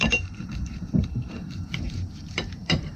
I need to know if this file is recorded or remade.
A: remade